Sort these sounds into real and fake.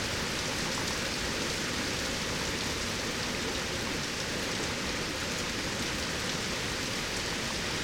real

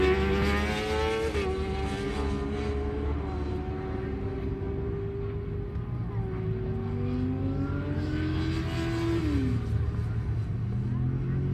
real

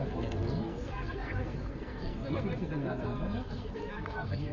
fake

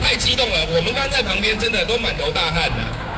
fake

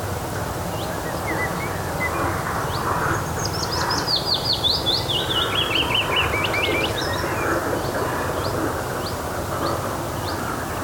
real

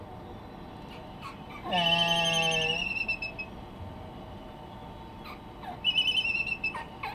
real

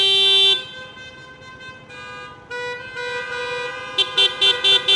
real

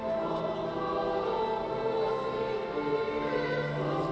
real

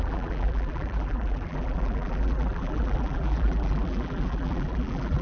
fake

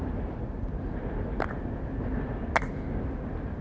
real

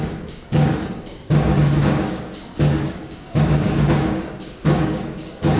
fake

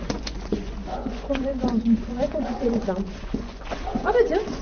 fake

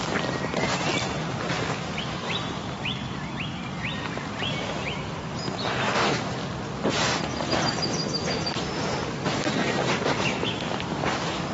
real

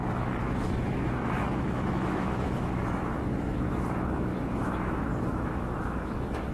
fake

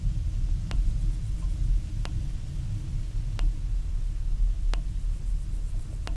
real